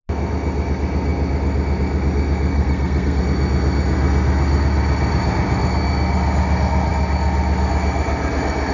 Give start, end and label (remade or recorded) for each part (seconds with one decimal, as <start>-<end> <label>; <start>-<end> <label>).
0.0-2.5 recorded; 2.5-3.2 remade; 3.2-8.7 recorded